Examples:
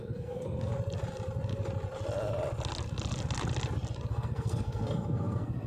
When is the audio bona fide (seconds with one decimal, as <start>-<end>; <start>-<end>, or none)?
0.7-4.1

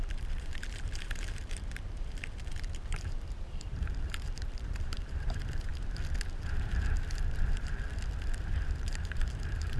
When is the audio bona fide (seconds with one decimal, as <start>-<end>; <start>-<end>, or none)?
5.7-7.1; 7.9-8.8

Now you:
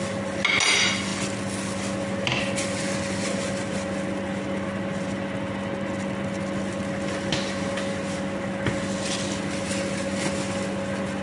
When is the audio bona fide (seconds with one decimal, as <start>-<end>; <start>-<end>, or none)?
0.0-11.2

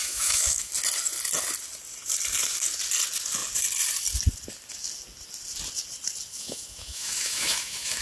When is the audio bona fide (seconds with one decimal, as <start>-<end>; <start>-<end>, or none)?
0.7-6.3